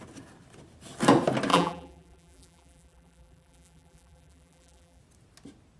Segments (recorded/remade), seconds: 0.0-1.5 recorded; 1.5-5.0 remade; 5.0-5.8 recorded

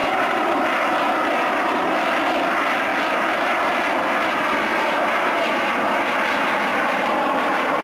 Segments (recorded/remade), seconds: 0.0-0.5 remade; 0.5-4.7 recorded; 4.7-5.9 remade; 5.9-6.7 recorded; 6.7-7.8 remade

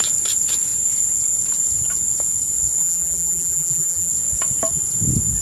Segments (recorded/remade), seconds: 0.0-2.8 recorded; 2.8-4.1 remade; 4.1-5.4 recorded

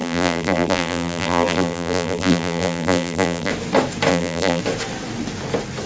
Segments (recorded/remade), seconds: 0.0-3.5 remade; 3.5-4.1 recorded; 4.1-4.6 remade; 4.6-5.9 recorded

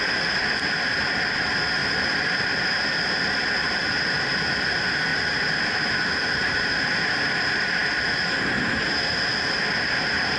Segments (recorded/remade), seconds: 0.0-1.8 recorded; 1.8-2.3 remade; 2.3-5.1 recorded; 5.1-7.1 remade; 7.1-10.4 recorded

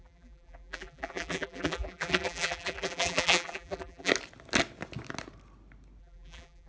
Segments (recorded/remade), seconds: 0.0-4.1 remade; 4.1-6.0 recorded; 6.0-6.7 remade